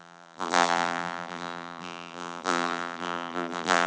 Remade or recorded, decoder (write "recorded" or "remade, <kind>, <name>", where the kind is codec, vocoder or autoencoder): remade, vocoder, BigVGAN v2